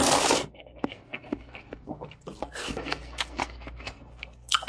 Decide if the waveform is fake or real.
fake